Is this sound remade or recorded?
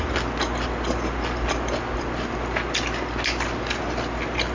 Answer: recorded